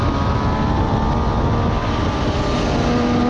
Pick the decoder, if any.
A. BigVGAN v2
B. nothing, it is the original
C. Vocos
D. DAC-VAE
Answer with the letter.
B